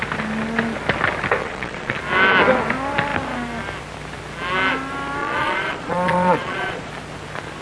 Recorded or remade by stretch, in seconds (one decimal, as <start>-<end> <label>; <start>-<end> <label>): 0.0-1.4 recorded; 1.4-2.0 remade; 2.0-5.2 recorded; 5.2-6.9 remade; 6.9-7.6 recorded